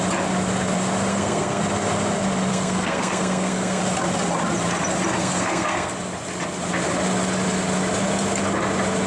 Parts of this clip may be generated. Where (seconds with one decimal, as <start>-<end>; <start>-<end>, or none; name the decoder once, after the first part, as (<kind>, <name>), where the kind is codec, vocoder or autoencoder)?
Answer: 1.1-1.6 (codec, SNAC); 2.5-3.8; 5.2-5.9